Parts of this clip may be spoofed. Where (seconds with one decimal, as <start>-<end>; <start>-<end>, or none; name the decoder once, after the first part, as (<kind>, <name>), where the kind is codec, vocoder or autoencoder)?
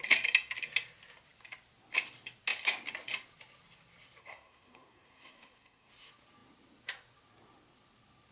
4.2-5.9 (codec, SNAC)